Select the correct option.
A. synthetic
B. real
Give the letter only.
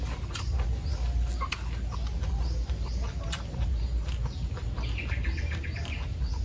B